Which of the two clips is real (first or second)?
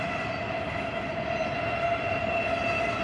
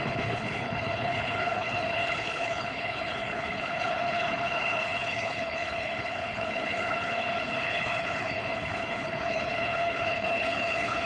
first